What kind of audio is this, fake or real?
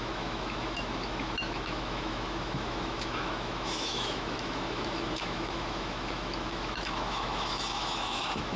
fake